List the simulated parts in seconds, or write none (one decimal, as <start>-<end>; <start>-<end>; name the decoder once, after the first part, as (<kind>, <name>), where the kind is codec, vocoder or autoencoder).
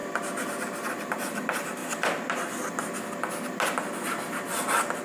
1.0-1.8 (vocoder, BigVGAN v2)